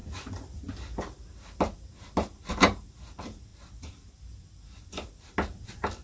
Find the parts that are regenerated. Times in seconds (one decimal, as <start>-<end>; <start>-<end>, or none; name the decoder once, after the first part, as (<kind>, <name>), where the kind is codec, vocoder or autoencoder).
none